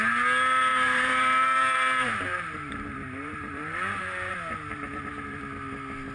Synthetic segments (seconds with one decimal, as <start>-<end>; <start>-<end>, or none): 0.7-4.3; 4.7-5.4